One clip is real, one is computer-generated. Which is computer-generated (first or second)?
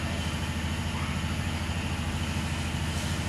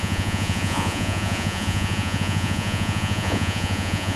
second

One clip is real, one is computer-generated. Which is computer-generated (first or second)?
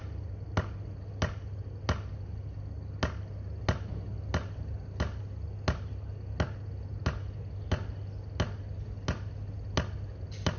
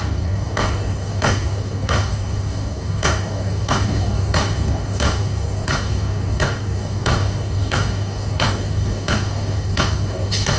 second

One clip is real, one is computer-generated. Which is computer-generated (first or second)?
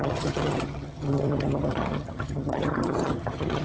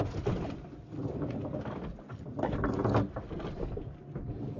first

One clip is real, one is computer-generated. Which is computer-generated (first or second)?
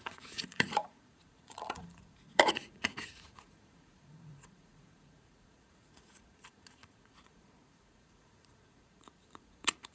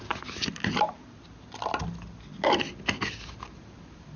first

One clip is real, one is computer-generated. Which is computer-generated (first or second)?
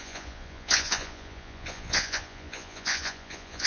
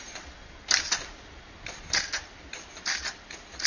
first